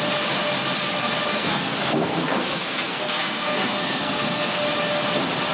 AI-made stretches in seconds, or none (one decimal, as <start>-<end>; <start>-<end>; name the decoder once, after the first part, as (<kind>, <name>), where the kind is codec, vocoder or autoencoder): 1.3-4.6 (codec, SNAC)